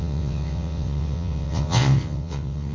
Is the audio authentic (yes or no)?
no